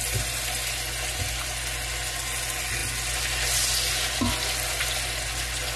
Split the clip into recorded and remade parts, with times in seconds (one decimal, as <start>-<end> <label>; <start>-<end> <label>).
0.0-5.8 recorded